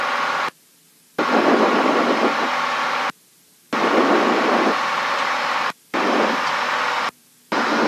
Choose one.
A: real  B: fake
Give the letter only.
A